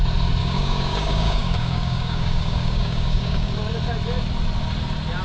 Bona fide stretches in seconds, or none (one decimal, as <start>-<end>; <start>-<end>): 0.0-0.4; 3.5-5.2